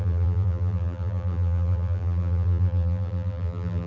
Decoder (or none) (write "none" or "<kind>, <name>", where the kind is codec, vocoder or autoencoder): vocoder, BigVGAN v2